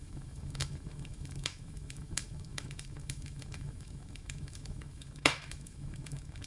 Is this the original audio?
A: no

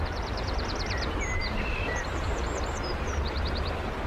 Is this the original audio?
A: no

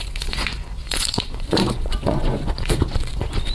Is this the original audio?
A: no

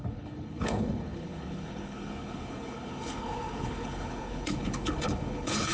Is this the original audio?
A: no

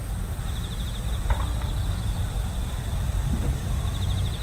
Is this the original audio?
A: yes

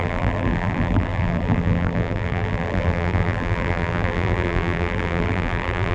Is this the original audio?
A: no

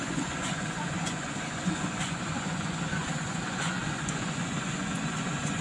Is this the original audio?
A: no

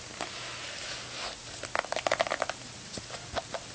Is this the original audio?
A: yes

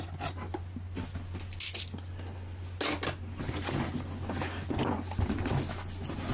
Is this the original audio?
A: yes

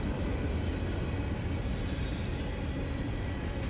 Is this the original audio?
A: yes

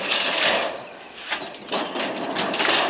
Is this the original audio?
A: yes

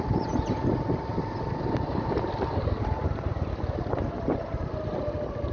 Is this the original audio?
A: yes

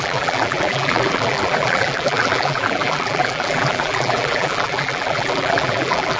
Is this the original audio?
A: no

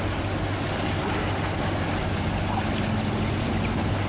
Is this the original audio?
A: yes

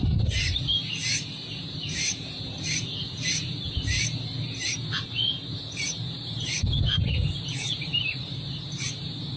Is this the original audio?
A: yes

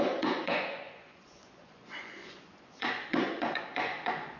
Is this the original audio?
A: no